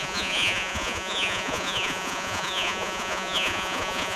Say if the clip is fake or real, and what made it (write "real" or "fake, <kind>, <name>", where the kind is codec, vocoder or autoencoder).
fake, vocoder, Vocos